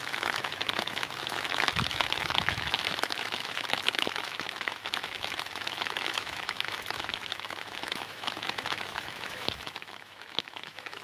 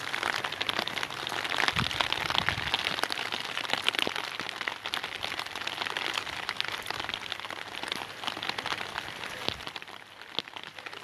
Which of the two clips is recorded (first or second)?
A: second